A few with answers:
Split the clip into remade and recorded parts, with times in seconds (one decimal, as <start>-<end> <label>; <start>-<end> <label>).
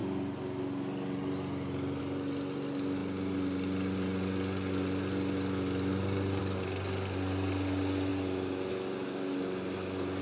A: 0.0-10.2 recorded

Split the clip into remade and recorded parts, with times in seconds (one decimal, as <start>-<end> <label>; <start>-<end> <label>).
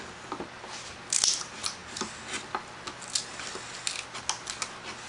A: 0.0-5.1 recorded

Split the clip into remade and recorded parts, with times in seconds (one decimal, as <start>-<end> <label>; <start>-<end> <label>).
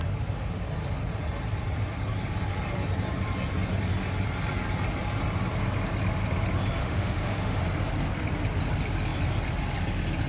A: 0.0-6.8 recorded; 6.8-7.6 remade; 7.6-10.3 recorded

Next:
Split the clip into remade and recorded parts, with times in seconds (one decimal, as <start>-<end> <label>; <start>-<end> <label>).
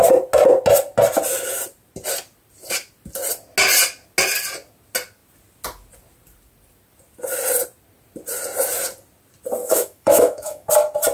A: 0.0-9.6 recorded; 9.6-10.7 remade; 10.7-11.1 recorded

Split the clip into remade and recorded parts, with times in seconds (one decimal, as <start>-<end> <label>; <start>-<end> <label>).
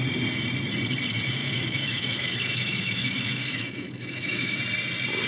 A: 0.0-1.4 recorded; 1.4-4.6 remade; 4.6-5.3 recorded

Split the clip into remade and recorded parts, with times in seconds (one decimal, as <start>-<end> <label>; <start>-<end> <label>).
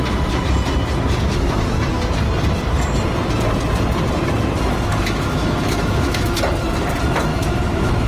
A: 0.0-4.9 recorded; 4.9-6.4 remade; 6.4-7.3 recorded; 7.3-8.1 remade